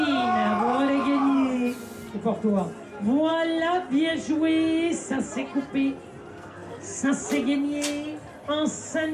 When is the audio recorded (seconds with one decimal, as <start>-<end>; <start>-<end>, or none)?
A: 0.0-6.3; 7.1-9.1